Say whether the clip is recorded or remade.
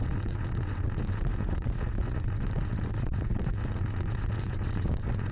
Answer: remade